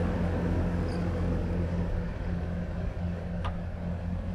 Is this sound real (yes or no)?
no